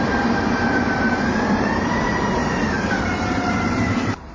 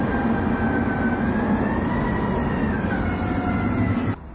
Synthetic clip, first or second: first